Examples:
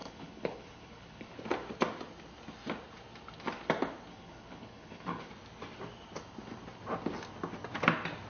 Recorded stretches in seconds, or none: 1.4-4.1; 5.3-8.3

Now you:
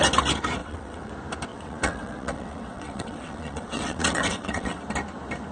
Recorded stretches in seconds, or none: 0.0-0.6; 1.1-1.5; 4.8-5.5

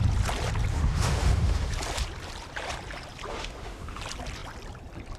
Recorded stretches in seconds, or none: 0.0-0.7; 1.7-3.3; 4.0-5.2

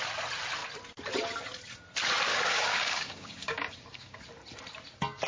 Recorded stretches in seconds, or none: 0.0-2.3; 4.2-5.3

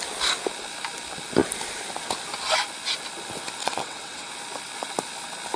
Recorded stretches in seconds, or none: 0.0-3.6; 4.3-5.6

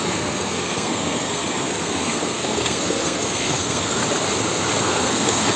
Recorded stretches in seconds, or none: 4.0-4.8

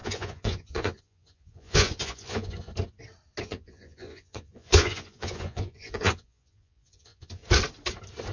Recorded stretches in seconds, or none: 2.7-3.4; 7.4-8.3

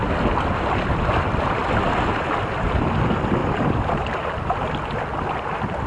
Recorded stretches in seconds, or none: 0.0-3.4; 4.8-5.9